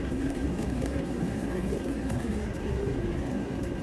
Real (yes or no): no